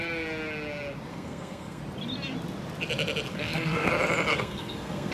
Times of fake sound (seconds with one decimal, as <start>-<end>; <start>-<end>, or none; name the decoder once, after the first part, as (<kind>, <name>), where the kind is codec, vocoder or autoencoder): 1.1-1.8 (codec, SNAC); 3.3-3.9; 4.3-5.1